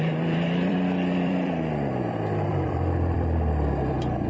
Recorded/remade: remade